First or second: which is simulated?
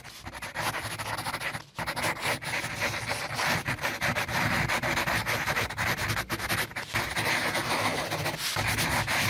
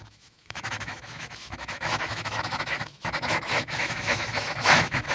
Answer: second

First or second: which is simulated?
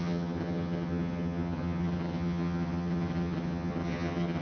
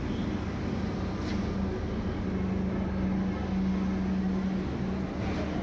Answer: first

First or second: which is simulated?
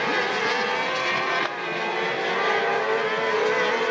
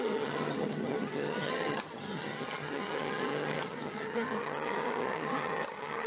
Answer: second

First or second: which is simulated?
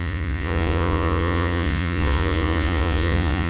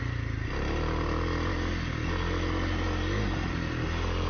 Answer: first